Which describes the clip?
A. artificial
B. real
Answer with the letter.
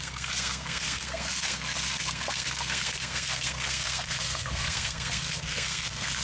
A